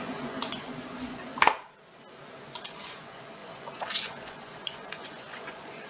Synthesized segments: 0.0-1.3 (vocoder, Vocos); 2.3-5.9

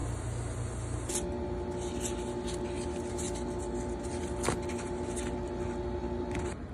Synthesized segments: none

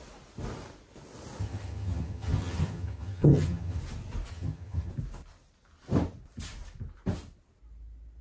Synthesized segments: 1.4-3.8 (vocoder, HiFi-GAN); 4.3-4.9

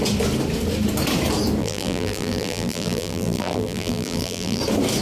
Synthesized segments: 1.6-4.6 (vocoder, BigVGAN v2)

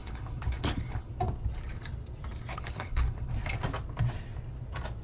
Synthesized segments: 0.0-1.1 (codec, HILCodec); 2.5-3.3

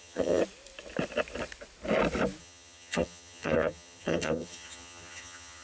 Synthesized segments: 0.0-0.4 (vocoder, HiFi-GAN); 2.4-5.6

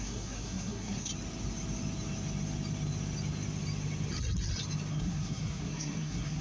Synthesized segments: 0.0-1.1 (codec, SNAC); 4.9-6.4